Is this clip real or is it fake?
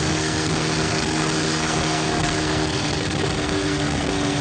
fake